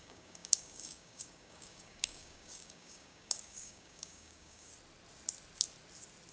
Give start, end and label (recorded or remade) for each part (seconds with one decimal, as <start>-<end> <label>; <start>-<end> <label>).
0.0-4.7 remade; 4.7-6.3 recorded

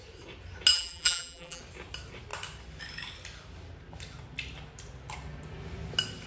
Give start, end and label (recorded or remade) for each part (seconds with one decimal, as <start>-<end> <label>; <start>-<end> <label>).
0.0-0.7 recorded; 0.7-1.6 remade; 1.6-6.3 recorded

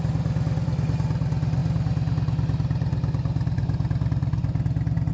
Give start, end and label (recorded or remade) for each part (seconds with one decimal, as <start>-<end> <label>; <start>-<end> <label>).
0.0-5.1 recorded